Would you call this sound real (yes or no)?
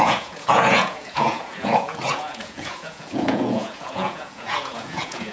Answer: no